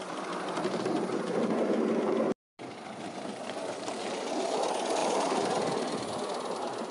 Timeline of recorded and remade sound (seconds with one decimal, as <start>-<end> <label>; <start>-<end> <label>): 0.0-5.0 recorded; 5.0-5.6 remade; 5.6-6.9 recorded